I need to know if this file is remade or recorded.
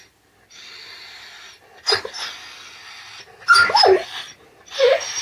remade